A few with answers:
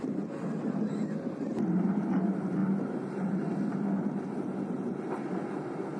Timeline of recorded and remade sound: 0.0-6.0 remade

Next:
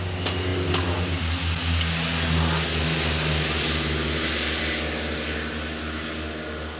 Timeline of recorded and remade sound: 0.0-6.8 recorded